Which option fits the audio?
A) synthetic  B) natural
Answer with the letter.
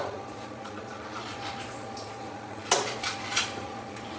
A